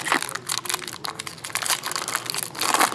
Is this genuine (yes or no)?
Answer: yes